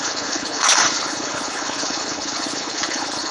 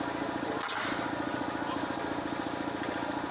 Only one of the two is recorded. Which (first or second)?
second